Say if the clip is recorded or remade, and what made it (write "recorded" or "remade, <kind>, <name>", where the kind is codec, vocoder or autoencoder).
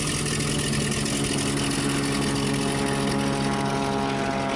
recorded